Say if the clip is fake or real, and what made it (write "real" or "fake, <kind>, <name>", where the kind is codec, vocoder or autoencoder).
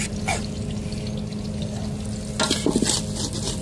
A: real